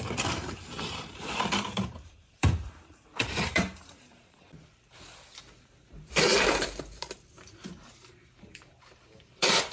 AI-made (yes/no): yes